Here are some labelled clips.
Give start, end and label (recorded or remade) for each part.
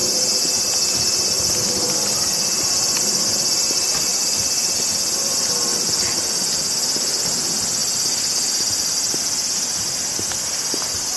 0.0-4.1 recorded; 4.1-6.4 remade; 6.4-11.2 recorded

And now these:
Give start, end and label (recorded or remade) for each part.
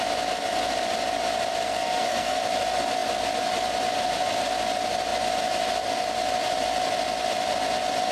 0.0-1.6 recorded; 1.6-2.4 remade; 2.4-8.1 recorded